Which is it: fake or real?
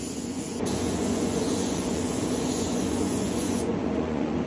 fake